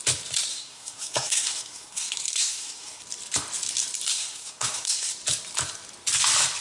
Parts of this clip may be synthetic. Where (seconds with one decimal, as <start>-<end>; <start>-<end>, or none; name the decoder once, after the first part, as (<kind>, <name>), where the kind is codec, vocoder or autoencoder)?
0.5-3.0 (codec, SNAC); 4.1-5.1